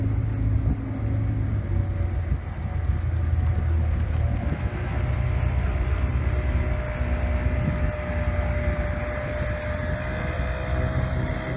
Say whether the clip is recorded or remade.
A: recorded